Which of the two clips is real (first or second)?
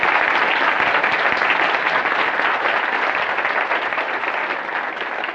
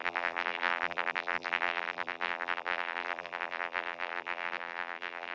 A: first